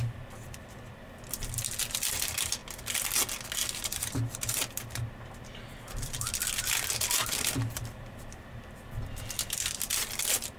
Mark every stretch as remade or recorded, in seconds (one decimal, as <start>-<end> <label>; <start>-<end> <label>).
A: 0.0-2.6 remade; 2.6-3.7 recorded; 3.7-10.6 remade